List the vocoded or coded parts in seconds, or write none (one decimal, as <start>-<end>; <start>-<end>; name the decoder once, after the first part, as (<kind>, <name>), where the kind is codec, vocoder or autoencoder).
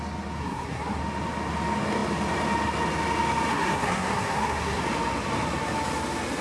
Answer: 0.4-1.0 (codec, SNAC); 3.5-4.8